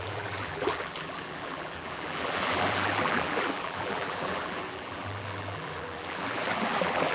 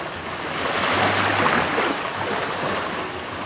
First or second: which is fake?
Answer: first